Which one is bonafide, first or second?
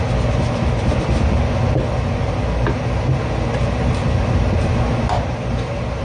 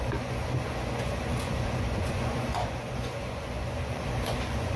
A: first